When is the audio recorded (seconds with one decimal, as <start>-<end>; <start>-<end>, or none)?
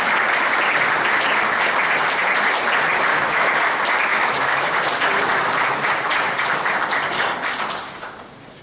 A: 0.0-3.1; 3.6-4.1; 4.7-8.6